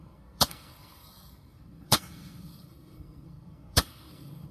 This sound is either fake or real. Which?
fake